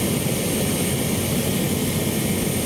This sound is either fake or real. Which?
real